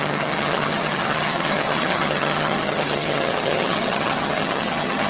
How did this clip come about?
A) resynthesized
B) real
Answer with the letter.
A